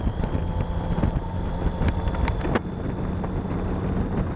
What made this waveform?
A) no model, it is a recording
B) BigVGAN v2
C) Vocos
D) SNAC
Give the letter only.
A